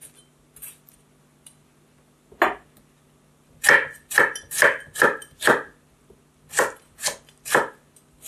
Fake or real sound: real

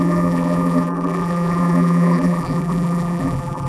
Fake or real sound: fake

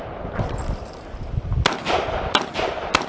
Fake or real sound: real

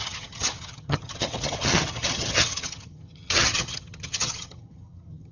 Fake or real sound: fake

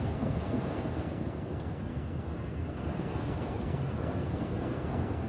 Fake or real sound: fake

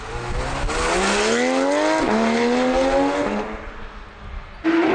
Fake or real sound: real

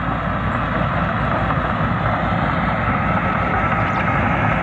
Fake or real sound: real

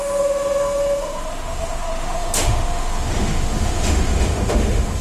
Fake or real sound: fake